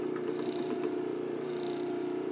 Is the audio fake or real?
fake